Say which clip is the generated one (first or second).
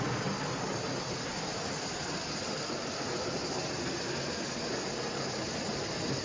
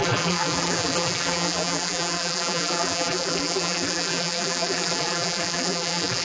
second